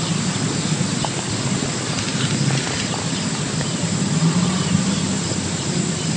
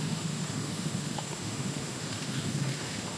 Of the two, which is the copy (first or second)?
second